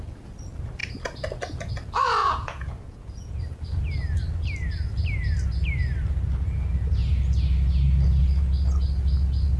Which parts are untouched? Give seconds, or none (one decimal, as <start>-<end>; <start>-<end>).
0.0-2.2; 3.4-9.6